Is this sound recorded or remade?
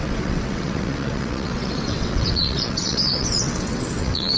remade